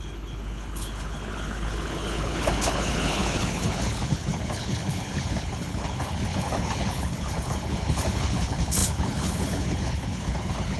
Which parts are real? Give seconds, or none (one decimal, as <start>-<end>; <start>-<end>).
none